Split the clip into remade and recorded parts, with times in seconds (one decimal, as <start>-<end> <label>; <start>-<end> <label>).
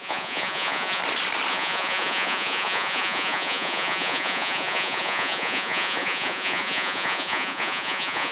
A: 0.0-1.0 remade; 1.0-1.5 recorded; 1.5-8.3 remade